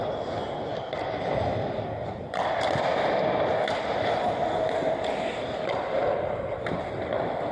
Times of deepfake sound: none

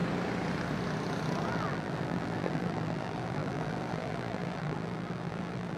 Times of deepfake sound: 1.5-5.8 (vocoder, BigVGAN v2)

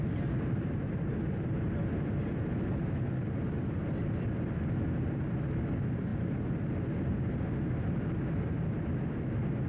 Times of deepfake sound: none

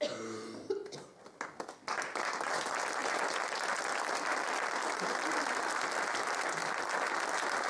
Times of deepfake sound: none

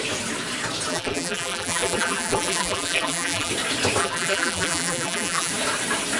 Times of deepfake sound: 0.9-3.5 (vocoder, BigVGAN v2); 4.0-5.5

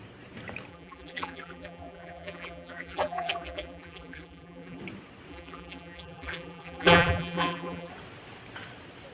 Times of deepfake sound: 0.7-4.8 (vocoder, BigVGAN v2); 5.3-7.9